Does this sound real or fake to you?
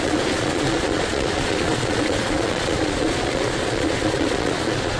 fake